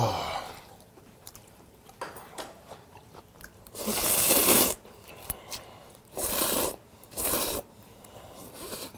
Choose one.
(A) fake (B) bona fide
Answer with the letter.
A